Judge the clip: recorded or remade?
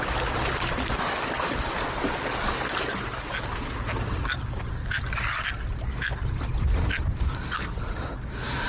recorded